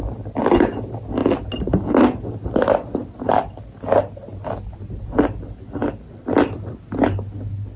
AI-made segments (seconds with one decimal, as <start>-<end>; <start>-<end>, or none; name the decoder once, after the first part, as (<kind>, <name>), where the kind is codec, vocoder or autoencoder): 5.8-6.8 (vocoder, BigVGAN v2)